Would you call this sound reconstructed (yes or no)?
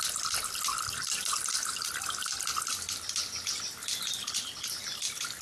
no